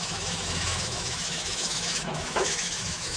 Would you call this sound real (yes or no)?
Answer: no